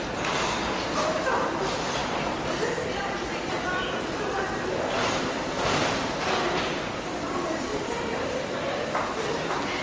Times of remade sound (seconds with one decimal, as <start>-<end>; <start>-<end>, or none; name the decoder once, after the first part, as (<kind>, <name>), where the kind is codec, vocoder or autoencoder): 7.7-8.3 (vocoder, BigVGAN v2)

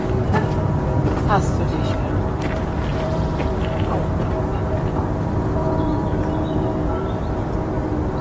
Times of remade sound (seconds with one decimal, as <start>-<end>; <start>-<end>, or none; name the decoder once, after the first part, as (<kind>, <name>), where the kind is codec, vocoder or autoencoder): 0.0-2.5 (vocoder, BigVGAN v2); 2.9-7.4

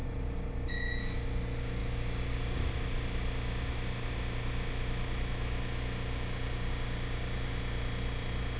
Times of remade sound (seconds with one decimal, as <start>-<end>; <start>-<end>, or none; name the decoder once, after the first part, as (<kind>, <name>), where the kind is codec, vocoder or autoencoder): 0.0-0.7 (vocoder, BigVGAN v2)

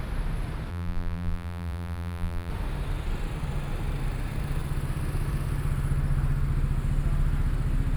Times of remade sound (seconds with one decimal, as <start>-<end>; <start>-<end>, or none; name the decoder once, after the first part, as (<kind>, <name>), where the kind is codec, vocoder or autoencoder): 0.7-2.5 (vocoder, BigVGAN v2)